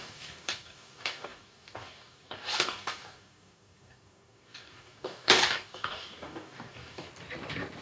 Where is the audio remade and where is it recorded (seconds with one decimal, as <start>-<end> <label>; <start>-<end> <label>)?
0.0-7.1 remade; 7.1-7.8 recorded